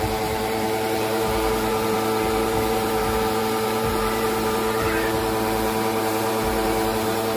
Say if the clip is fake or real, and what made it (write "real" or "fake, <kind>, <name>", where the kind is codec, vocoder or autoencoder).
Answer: fake, vocoder, BigVGAN v2